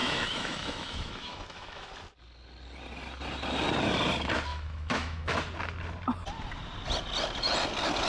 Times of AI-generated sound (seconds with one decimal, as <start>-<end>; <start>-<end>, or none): 0.0-1.9; 4.5-5.4